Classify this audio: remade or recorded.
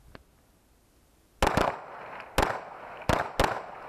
recorded